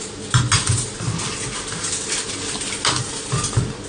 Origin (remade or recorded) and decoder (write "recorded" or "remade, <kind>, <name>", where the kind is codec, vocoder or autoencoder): recorded